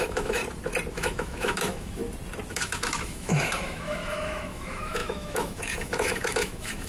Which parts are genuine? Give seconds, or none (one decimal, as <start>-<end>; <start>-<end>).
0.4-0.9; 2.0-2.5